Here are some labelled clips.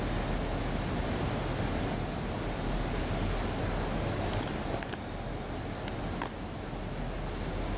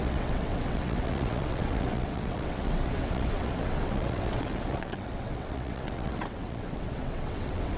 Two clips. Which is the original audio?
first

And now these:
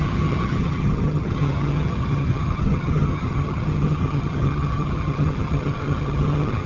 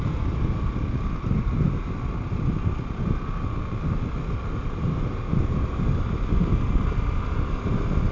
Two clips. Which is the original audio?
second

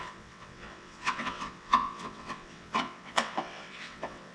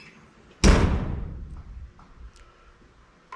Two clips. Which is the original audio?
second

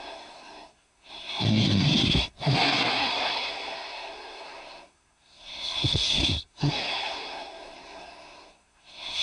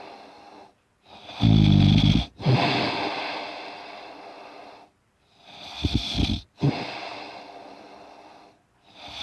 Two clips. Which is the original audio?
second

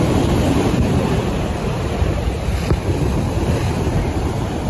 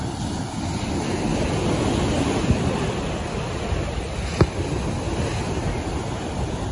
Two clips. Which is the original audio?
second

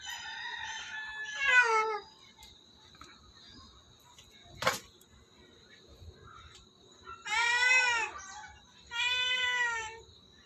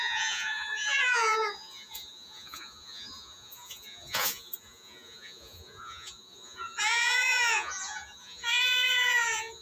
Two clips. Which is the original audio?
first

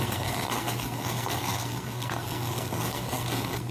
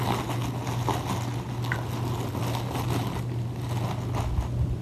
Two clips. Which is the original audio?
second